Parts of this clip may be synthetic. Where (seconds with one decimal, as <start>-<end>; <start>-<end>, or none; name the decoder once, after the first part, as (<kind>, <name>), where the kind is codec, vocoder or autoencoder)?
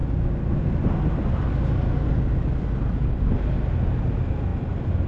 none